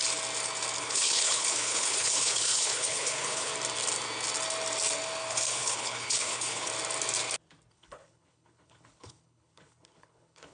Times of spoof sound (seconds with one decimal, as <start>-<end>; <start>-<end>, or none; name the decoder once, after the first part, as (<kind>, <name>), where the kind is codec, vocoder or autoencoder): 0.8-3.5 (codec, HILCodec); 5.3-6.7; 7.7-10.5